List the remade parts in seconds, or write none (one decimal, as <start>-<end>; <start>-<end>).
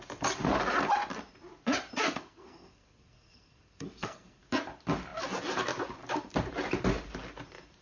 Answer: 2.0-4.5